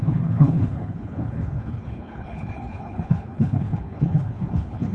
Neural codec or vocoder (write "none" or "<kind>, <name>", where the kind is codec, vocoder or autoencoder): codec, HILCodec